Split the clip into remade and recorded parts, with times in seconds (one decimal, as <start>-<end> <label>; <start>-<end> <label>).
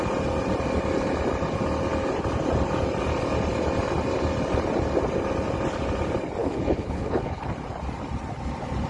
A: 0.0-6.4 recorded; 6.4-7.5 remade; 7.5-8.9 recorded